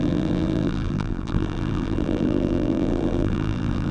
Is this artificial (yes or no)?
yes